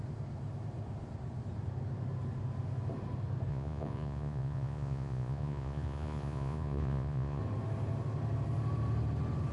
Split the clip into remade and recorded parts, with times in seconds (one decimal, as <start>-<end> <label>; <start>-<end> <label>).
0.0-3.5 recorded; 3.5-7.4 remade; 7.4-9.5 recorded